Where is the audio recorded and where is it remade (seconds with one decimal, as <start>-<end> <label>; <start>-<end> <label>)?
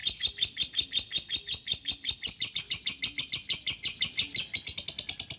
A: 0.0-5.4 recorded